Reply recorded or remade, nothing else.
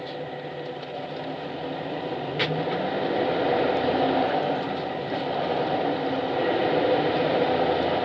recorded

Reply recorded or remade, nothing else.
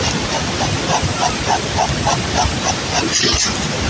recorded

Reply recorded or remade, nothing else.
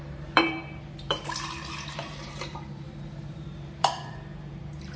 remade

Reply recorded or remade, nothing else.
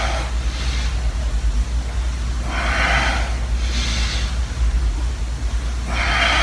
recorded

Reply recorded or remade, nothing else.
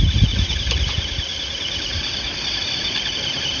recorded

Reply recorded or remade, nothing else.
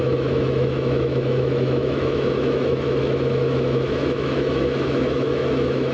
remade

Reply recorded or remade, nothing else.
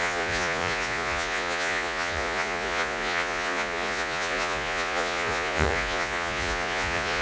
remade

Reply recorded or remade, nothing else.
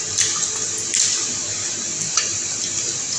recorded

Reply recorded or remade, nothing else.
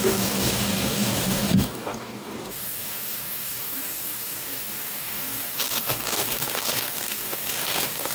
remade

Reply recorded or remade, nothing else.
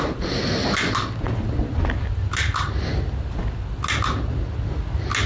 recorded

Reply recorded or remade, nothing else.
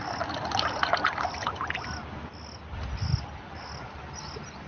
recorded